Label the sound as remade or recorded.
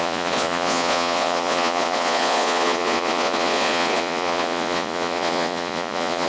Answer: remade